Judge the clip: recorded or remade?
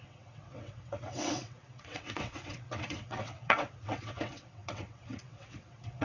remade